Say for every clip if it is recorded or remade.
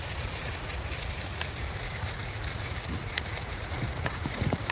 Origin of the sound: remade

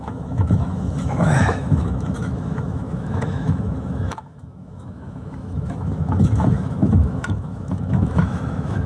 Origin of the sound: remade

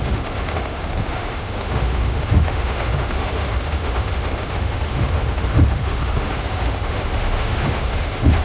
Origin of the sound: remade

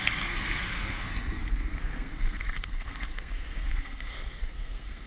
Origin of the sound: remade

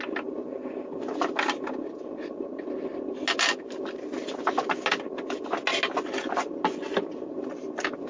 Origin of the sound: recorded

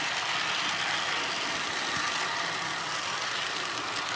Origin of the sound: recorded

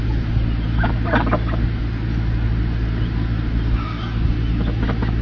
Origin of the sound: recorded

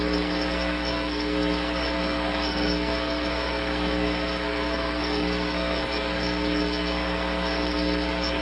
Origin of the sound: remade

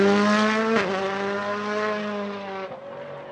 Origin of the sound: recorded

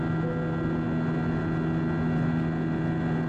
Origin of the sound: recorded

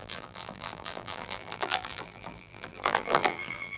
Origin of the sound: remade